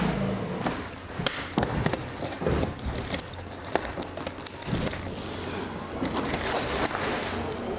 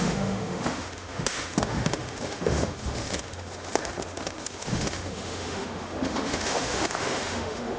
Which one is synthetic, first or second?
second